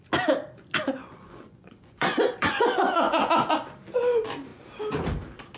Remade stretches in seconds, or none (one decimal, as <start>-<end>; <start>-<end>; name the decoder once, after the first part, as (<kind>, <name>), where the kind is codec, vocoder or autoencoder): 1.0-3.3 (vocoder, Vocos)